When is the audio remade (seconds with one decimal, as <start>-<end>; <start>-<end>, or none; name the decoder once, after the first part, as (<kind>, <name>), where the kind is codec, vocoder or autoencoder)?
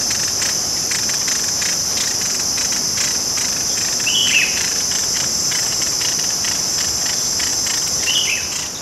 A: 4.2-6.8 (vocoder, BigVGAN v2)